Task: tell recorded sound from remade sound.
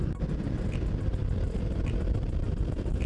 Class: recorded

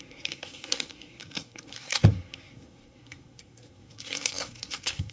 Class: remade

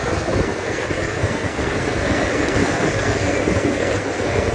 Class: remade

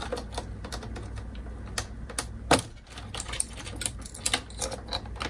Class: recorded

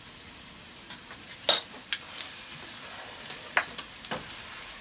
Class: recorded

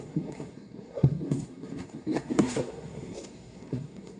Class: remade